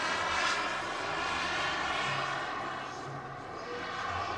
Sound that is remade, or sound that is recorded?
recorded